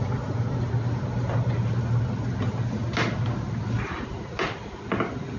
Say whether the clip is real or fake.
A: real